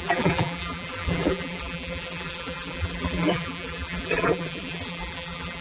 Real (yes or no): no